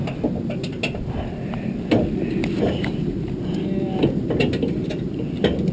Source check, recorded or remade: recorded